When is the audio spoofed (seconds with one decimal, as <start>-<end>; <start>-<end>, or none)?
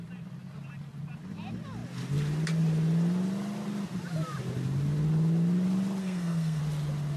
6.0-6.6